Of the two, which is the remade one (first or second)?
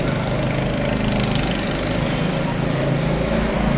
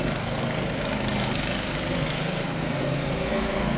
second